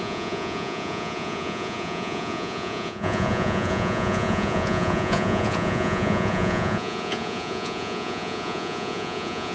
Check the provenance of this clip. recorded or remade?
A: remade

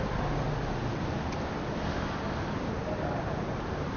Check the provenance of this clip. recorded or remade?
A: recorded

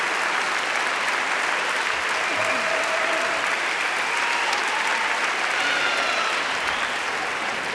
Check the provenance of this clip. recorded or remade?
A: recorded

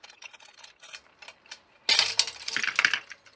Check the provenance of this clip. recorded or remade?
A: recorded